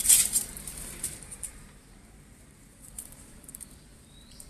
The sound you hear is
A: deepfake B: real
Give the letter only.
A